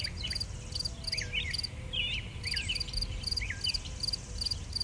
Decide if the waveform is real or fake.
real